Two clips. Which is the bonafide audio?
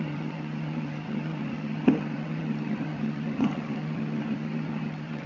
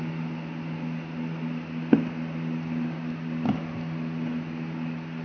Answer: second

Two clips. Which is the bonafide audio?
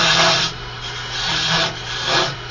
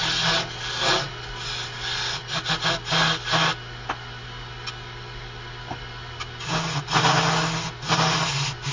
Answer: second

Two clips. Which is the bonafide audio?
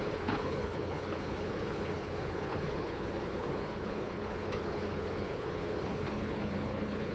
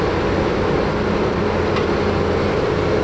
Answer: second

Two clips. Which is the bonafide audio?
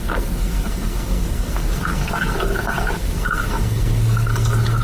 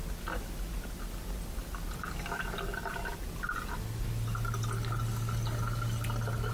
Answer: second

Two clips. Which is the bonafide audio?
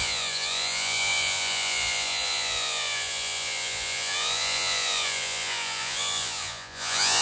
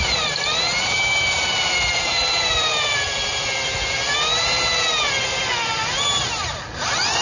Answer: second